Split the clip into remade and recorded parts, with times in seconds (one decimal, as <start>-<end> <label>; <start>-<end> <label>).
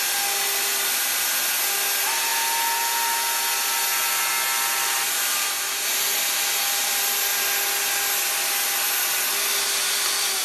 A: 0.0-10.4 recorded